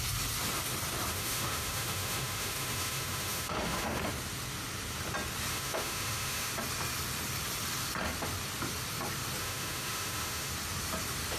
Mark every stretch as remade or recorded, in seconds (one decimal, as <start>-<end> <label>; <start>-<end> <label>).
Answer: 0.0-1.1 recorded; 1.1-4.0 remade; 4.0-5.5 recorded; 5.5-6.5 remade; 6.5-9.4 recorded; 9.4-10.5 remade; 10.5-11.4 recorded